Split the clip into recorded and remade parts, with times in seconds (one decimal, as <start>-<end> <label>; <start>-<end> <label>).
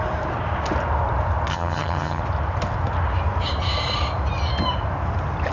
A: 0.0-1.5 recorded; 1.5-2.2 remade; 2.2-5.5 recorded